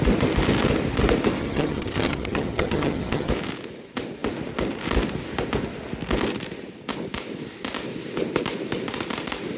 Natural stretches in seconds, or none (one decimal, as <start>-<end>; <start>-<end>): 0.0-1.4; 3.3-9.6